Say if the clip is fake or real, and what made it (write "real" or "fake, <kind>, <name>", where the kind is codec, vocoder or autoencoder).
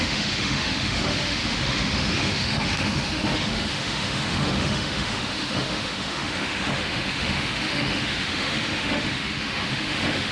fake, autoencoder, DAC-VAE